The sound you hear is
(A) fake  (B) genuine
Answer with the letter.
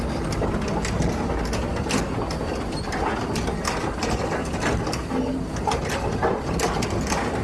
B